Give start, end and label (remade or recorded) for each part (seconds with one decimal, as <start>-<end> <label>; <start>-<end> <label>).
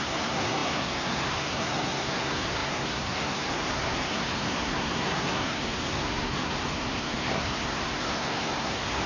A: 0.0-9.1 remade